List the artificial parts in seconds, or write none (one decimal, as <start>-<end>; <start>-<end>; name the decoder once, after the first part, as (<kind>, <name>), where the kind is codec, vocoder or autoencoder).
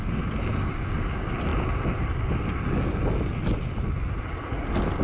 none